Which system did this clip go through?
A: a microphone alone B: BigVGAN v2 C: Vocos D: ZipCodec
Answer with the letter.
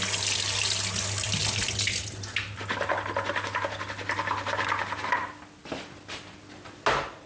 A